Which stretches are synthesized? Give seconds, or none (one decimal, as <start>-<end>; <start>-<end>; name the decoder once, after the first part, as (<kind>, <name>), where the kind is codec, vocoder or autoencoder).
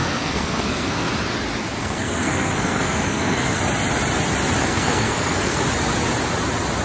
0.0-1.1 (codec, SNAC); 1.8-3.6; 4.6-5.6